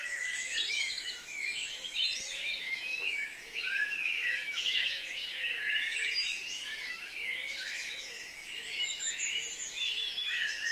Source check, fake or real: fake